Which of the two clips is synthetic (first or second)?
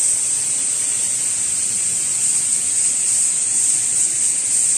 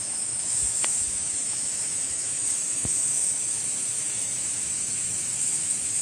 second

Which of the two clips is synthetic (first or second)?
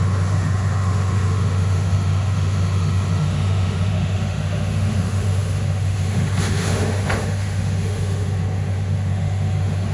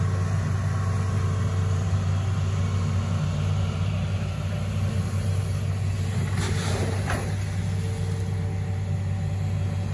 first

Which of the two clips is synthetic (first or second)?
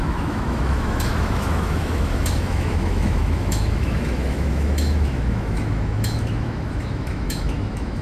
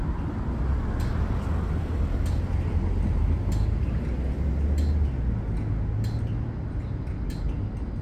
first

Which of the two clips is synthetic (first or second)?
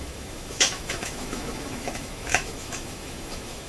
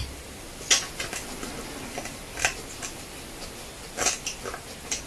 first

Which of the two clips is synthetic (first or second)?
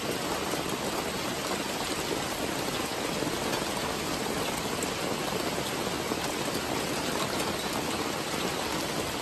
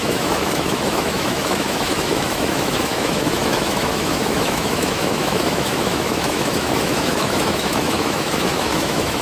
second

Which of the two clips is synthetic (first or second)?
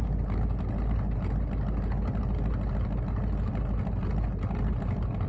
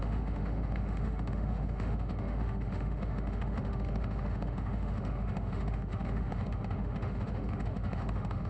second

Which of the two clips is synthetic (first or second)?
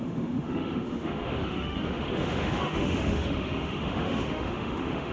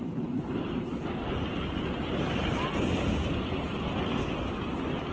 first